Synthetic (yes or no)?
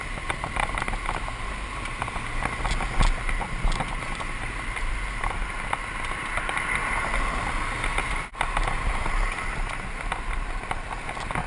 no